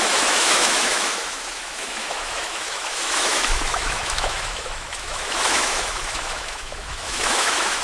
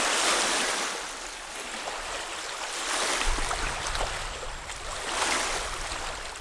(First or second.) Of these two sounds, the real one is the second